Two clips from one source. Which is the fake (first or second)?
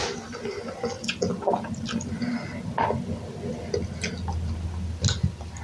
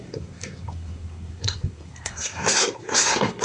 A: second